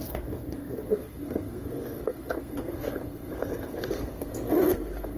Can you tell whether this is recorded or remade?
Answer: remade